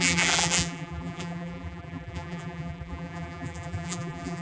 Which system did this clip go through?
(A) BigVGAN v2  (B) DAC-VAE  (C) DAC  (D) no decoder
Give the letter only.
A